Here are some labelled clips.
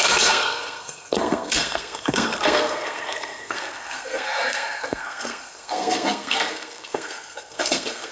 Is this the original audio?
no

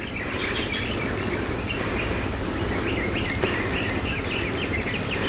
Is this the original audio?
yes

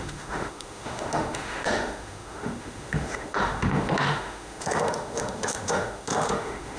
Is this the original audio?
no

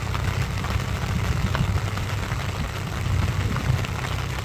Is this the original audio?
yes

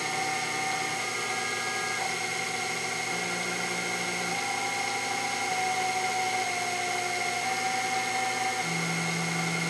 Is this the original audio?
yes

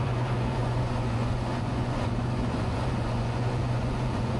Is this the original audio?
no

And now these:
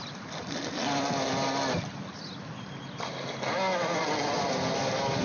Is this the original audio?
yes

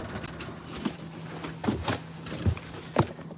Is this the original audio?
yes